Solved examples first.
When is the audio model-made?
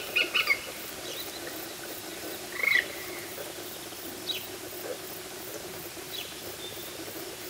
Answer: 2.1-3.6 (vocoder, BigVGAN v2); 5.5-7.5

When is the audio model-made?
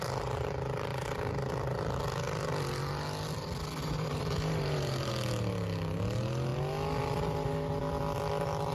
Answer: 3.8-5.1 (vocoder, BigVGAN v2)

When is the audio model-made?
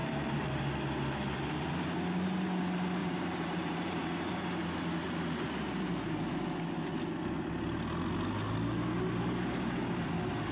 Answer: 0.0-0.6 (vocoder, BigVGAN v2); 3.0-4.6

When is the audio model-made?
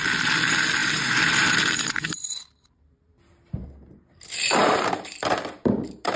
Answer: 0.8-3.1 (vocoder, BigVGAN v2); 4.6-6.2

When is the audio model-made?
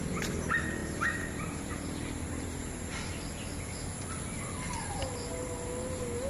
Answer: 0.8-3.2 (vocoder, BigVGAN v2)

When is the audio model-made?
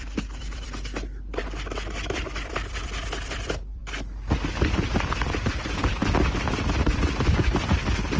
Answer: 0.0-3.8 (vocoder, BigVGAN v2); 4.5-6.0; 6.8-8.2